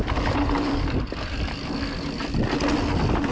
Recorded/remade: recorded